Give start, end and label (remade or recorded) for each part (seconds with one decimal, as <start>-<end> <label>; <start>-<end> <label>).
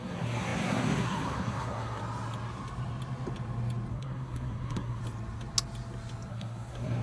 0.0-2.0 remade; 2.0-3.9 recorded; 3.9-5.0 remade; 5.0-6.3 recorded; 6.3-7.0 remade